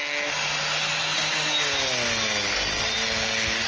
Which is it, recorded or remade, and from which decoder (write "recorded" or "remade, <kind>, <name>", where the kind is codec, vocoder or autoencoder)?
recorded